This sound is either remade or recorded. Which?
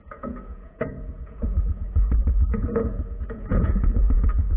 remade